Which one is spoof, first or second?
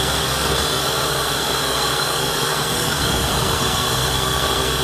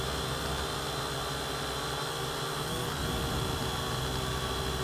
first